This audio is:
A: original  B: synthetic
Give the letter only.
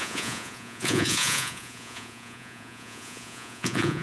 B